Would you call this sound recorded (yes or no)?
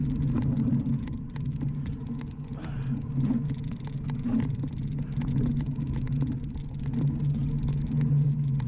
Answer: yes